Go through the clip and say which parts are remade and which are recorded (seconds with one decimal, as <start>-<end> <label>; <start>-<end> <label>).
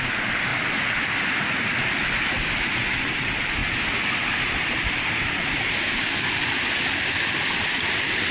0.0-8.3 recorded